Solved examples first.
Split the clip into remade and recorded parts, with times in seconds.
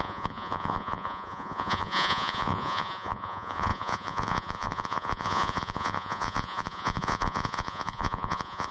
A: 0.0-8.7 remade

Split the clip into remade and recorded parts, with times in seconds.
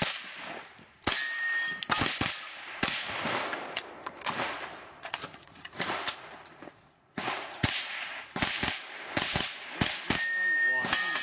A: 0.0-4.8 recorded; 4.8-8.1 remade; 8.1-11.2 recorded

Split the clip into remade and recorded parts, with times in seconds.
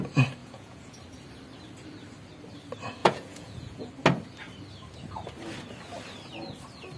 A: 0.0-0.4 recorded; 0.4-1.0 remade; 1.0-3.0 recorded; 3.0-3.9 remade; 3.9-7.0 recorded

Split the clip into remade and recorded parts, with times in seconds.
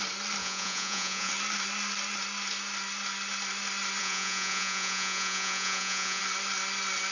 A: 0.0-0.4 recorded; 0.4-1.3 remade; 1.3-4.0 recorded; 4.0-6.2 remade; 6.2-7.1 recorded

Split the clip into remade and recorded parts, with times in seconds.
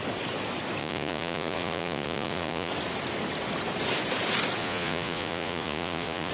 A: 0.0-0.8 recorded; 0.8-2.7 remade; 2.7-4.6 recorded; 4.6-6.3 remade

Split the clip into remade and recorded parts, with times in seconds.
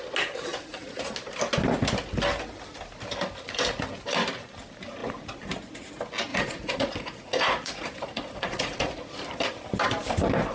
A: 0.0-0.5 recorded; 0.5-1.1 remade; 1.1-6.3 recorded; 6.3-9.0 remade; 9.0-10.5 recorded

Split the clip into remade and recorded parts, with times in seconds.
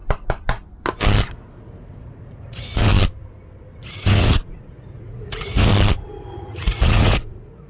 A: 0.0-1.4 recorded; 1.4-2.9 remade; 2.9-3.8 recorded; 3.8-5.7 remade; 5.7-6.2 recorded; 6.2-7.7 remade